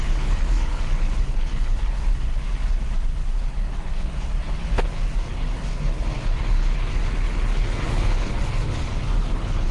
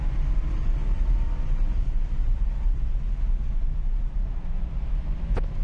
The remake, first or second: first